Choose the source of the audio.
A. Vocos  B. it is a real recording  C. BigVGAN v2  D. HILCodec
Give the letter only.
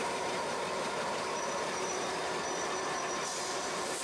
C